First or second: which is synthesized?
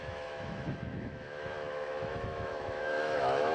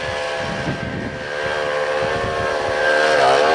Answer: first